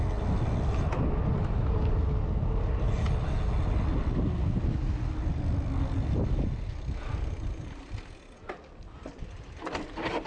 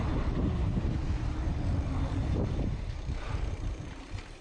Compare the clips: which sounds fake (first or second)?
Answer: second